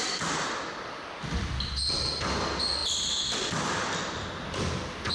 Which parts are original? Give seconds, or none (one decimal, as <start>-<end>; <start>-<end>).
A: 0.0-5.1